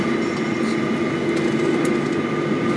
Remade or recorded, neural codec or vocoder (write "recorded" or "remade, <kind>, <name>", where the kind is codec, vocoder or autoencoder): recorded